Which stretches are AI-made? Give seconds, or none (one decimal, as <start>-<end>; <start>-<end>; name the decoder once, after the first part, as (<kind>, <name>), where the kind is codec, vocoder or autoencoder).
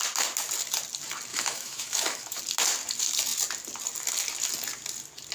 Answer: 1.3-2.4 (autoencoder, DAC-VAE)